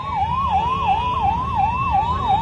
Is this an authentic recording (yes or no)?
yes